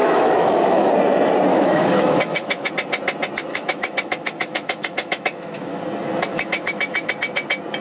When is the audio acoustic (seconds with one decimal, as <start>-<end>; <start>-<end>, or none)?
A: 0.9-1.5; 2.7-3.5; 5.8-6.3; 7.1-7.8